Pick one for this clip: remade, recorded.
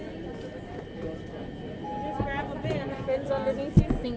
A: recorded